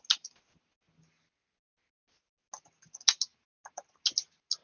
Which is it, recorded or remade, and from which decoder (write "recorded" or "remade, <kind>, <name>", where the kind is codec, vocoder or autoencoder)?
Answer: recorded